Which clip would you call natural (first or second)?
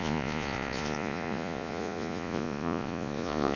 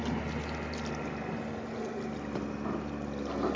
second